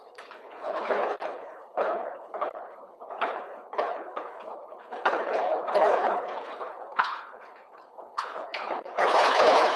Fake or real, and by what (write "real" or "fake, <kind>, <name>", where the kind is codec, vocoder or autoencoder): fake, codec, HILCodec